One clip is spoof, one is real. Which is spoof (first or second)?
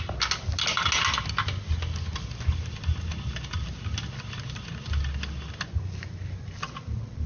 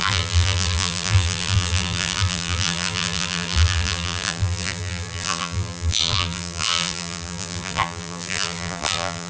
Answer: second